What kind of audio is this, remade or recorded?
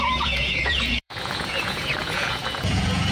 remade